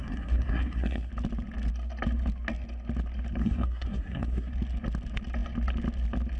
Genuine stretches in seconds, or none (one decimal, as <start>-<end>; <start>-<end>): 1.1-3.4; 4.5-6.4